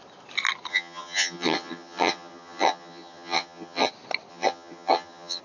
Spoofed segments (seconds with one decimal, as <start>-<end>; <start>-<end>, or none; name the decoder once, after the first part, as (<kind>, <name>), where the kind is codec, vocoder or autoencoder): 0.7-3.9 (vocoder, HiFi-GAN); 4.3-5.4